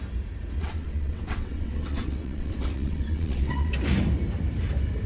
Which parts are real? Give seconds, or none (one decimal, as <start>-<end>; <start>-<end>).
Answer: 0.0-0.6; 3.7-5.1